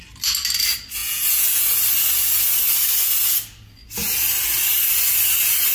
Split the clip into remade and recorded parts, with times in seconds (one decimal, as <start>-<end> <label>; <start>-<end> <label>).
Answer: 0.0-1.0 recorded; 1.0-1.8 remade; 1.8-5.7 recorded